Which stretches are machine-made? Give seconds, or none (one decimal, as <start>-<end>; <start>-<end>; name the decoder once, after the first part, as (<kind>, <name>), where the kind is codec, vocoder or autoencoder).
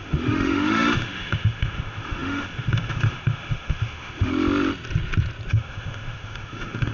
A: 0.0-4.3 (autoencoder, DAC-VAE); 5.5-6.9